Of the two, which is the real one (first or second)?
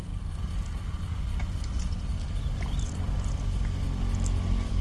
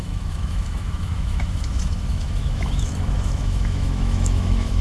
first